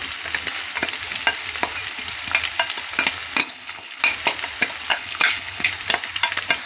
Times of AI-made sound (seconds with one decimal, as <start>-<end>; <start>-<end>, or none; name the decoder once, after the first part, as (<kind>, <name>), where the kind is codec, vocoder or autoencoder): 3.4-4.0 (codec, HILCodec); 4.9-5.7